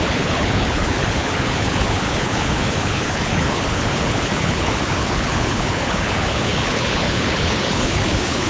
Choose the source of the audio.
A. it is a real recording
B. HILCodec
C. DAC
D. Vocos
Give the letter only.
B